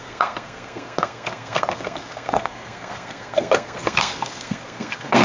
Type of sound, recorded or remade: remade